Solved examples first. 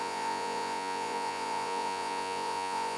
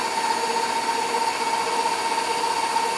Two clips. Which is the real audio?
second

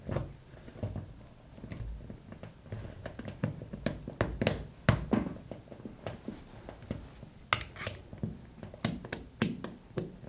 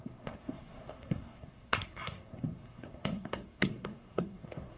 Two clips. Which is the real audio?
first